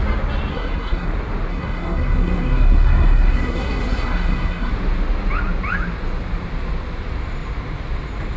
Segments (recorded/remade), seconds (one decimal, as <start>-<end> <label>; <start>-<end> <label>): 0.0-0.5 recorded; 0.5-1.1 remade; 1.1-1.5 recorded; 1.5-4.7 remade; 4.7-8.4 recorded